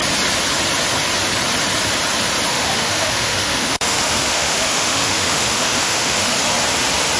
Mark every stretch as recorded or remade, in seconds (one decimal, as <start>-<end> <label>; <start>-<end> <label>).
0.0-2.5 recorded; 2.5-6.3 remade; 6.3-7.2 recorded